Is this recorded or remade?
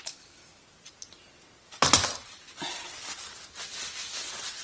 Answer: recorded